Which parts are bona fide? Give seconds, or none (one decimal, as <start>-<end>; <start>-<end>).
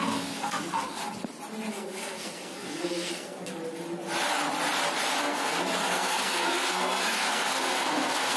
1.0-1.7; 3.6-5.2